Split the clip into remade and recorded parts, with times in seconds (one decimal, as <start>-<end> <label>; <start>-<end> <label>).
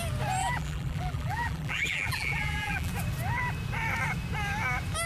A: 0.0-0.4 recorded; 0.4-2.9 remade; 2.9-5.1 recorded